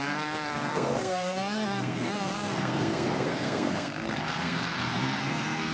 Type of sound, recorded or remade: remade